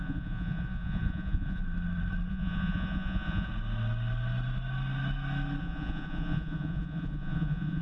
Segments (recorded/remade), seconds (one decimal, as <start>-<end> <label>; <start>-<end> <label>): 0.0-1.6 remade; 1.6-2.3 recorded; 2.3-3.5 remade; 3.5-5.6 recorded; 5.6-7.8 remade